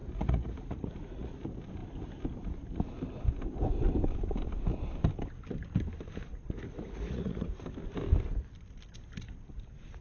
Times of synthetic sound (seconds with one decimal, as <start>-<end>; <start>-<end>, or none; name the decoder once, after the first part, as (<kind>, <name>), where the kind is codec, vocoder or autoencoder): 0.0-1.3 (vocoder, Vocos); 6.3-7.5